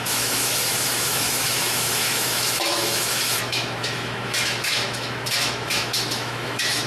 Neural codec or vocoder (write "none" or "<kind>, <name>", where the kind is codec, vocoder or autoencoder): autoencoder, DAC-VAE